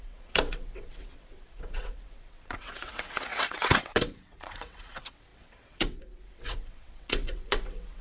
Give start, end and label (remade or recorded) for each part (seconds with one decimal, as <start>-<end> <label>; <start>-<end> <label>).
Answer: 0.0-8.0 remade